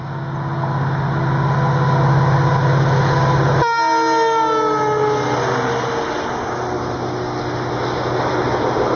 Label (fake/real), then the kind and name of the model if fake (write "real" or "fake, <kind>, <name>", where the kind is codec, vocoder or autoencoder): real